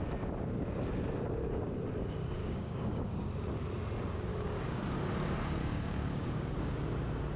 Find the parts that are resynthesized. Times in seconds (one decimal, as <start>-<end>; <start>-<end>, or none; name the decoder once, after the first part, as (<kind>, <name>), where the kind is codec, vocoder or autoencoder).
2.4-3.3 (codec, DAC); 4.3-4.8; 5.6-6.5